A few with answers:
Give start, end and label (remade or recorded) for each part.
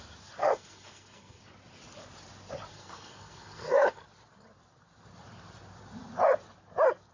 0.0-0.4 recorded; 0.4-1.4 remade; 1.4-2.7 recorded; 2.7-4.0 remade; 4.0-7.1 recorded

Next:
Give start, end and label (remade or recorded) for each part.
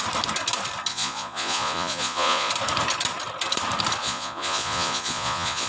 0.0-0.9 recorded; 0.9-2.5 remade; 2.5-4.0 recorded; 4.0-5.7 remade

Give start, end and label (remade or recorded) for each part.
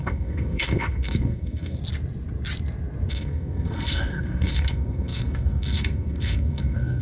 0.0-1.8 remade; 1.8-3.1 recorded; 3.1-7.0 remade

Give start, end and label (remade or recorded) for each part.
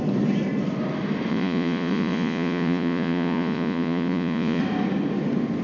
0.0-1.3 recorded; 1.3-4.6 remade; 4.6-5.6 recorded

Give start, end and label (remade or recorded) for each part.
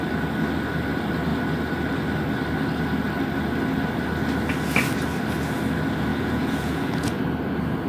0.0-6.1 recorded; 6.1-7.2 remade; 7.2-7.9 recorded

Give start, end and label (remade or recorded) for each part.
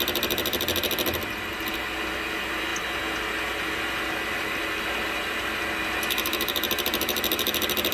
0.0-7.9 recorded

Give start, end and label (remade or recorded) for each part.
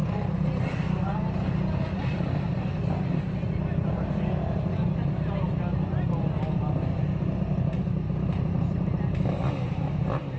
0.0-10.4 recorded